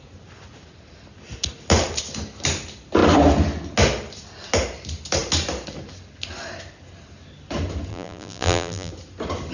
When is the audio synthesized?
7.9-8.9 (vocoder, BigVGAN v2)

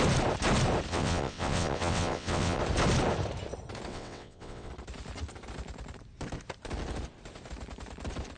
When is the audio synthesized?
0.9-2.6 (vocoder, WaveNeXt); 3.9-4.7